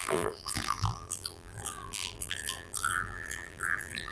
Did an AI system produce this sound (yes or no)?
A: yes